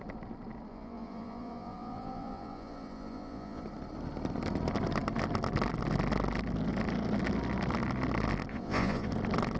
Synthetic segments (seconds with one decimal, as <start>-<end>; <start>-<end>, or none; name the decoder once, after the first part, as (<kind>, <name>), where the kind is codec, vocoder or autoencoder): 0.7-3.6 (vocoder, Vocos); 8.5-9.1